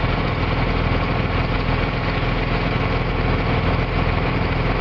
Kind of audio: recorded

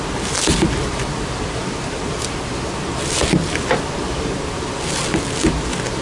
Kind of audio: recorded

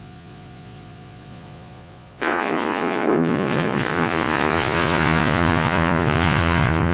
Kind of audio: remade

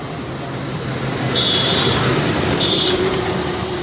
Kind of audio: remade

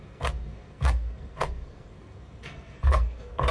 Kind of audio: remade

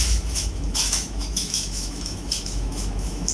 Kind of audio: remade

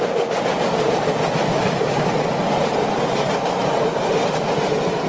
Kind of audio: recorded